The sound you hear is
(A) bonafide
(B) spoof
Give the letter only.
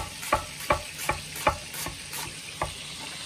A